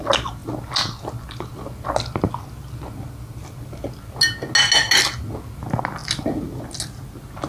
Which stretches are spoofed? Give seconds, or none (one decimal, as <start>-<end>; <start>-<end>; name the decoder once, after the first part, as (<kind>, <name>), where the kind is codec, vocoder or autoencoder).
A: none